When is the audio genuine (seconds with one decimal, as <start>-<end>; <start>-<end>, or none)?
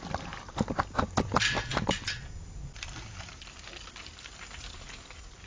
0.0-5.5